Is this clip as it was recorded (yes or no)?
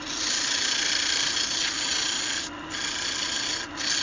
yes